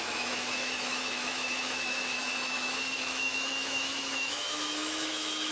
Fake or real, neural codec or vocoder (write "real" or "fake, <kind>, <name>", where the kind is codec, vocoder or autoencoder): fake, autoencoder, DAC-VAE